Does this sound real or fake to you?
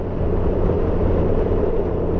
fake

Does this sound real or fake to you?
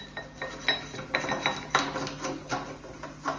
real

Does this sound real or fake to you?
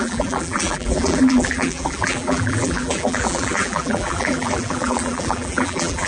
fake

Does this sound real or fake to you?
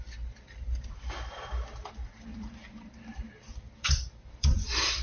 fake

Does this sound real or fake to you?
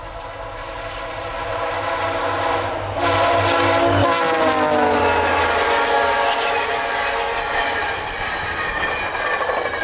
real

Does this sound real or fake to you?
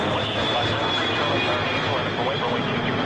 real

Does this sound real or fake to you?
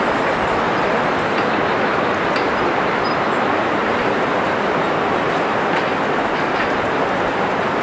real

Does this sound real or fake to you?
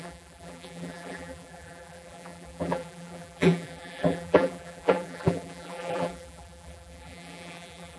fake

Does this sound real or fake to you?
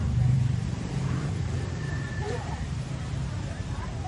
fake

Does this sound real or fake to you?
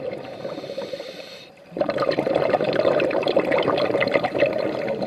fake